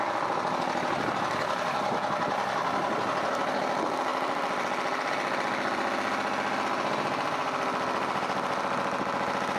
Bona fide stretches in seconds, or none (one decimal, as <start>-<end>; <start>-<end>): 0.0-4.1; 5.1-9.6